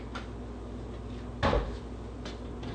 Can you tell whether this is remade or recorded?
recorded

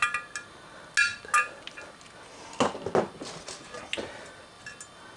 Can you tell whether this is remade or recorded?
recorded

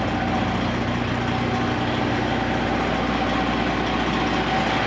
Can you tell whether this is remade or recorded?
recorded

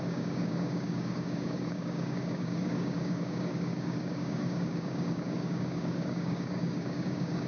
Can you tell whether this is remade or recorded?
remade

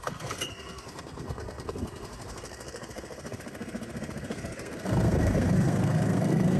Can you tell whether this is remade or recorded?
remade